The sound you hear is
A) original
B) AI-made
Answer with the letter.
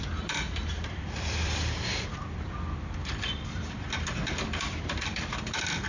B